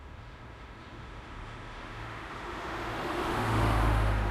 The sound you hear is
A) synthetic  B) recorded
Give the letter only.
A